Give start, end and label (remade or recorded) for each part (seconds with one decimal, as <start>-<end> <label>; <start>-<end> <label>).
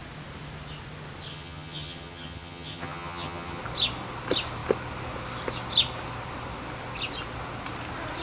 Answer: 0.0-1.3 recorded; 1.3-3.6 remade; 3.6-8.2 recorded